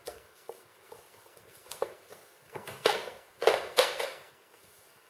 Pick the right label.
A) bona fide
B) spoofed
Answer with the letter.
B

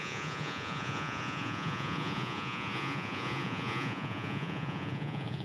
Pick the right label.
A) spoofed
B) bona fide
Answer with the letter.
A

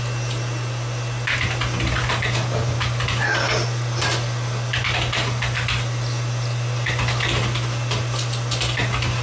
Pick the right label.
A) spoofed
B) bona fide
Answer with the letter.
B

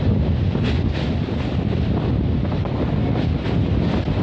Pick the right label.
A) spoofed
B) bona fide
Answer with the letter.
B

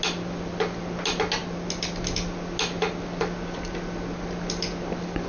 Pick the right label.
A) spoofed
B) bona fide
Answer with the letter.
B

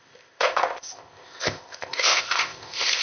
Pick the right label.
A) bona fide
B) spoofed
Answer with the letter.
B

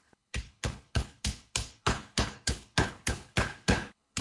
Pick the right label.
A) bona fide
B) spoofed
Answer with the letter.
B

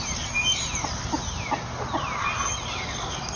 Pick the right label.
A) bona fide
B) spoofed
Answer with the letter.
A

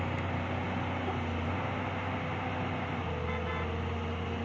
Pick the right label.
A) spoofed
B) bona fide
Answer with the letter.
B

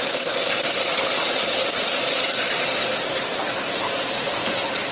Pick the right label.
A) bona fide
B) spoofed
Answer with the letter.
B